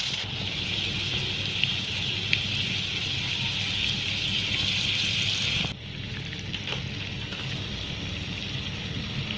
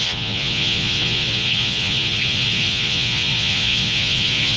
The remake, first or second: second